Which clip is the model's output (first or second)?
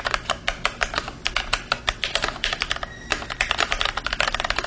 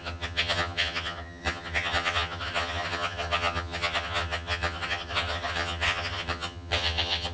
second